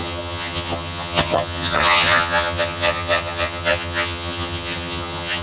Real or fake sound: fake